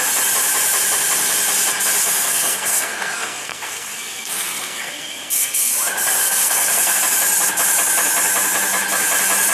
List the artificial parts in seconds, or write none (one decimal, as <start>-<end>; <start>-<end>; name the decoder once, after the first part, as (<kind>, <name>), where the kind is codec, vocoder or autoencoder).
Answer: 2.0-5.7 (codec, SNAC); 6.2-7.0